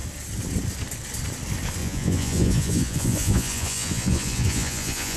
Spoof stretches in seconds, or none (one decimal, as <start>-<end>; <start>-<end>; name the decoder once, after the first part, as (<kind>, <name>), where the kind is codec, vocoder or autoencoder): 1.8-5.2 (vocoder, Vocos)